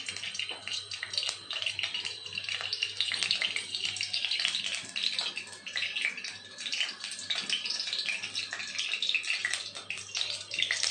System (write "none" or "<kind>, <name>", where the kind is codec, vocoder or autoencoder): none